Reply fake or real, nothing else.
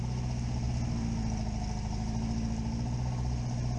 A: real